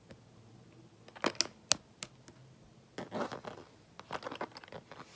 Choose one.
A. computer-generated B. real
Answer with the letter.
B